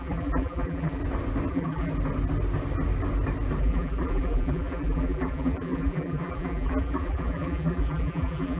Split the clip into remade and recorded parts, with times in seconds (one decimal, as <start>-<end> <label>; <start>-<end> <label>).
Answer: 0.0-1.0 remade; 1.0-1.5 recorded; 1.5-1.9 remade; 1.9-3.6 recorded; 3.6-8.6 remade